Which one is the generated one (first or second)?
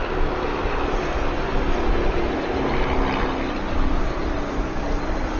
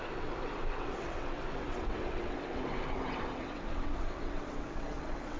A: second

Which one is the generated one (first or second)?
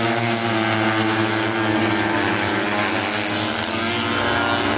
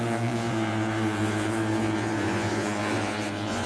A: second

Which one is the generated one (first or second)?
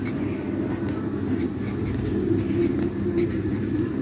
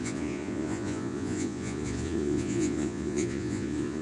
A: second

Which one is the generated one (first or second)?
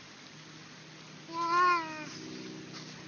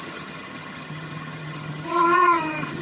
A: second